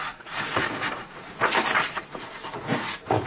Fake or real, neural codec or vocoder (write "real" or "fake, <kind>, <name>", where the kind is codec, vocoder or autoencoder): fake, vocoder, Vocos